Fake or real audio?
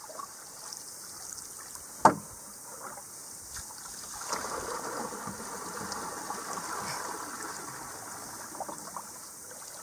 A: real